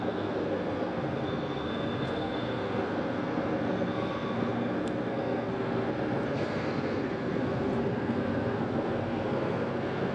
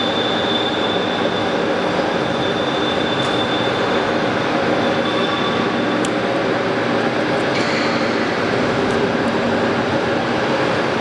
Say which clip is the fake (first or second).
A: first